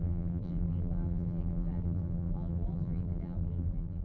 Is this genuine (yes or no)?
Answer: no